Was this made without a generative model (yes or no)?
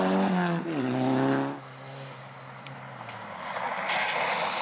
yes